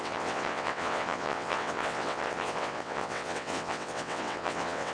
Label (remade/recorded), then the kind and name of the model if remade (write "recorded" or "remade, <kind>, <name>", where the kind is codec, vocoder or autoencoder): remade, vocoder, WaveNeXt